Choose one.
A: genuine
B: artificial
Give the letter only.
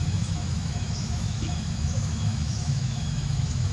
B